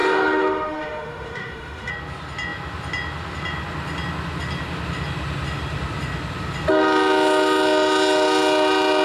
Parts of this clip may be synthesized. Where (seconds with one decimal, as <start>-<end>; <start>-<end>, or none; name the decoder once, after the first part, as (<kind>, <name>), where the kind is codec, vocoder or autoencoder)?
0.0-1.9 (autoencoder, DAC-VAE)

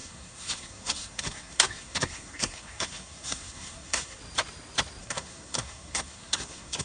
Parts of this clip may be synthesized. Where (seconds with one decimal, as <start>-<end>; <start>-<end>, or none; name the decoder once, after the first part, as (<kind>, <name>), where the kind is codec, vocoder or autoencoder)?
0.0-4.2 (codec, SNAC); 5.0-6.8